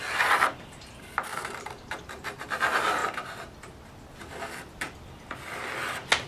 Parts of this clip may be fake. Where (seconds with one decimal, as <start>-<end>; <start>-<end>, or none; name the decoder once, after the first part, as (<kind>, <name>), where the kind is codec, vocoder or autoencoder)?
1.3-2.0 (vocoder, BigVGAN v2)